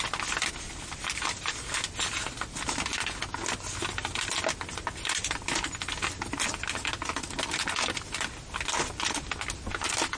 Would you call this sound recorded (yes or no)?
yes